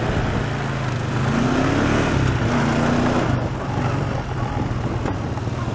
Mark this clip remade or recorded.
recorded